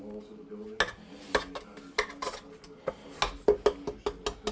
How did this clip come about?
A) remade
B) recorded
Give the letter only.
B